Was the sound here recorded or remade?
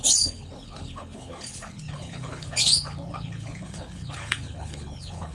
remade